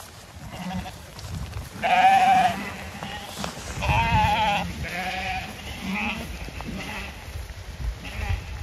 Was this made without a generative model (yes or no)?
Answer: yes